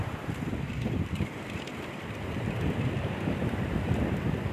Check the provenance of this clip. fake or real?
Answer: fake